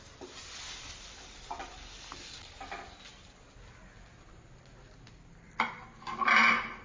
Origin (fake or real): real